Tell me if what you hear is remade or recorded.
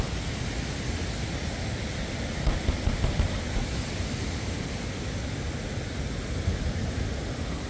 recorded